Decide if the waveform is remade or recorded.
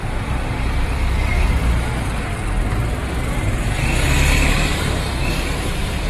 remade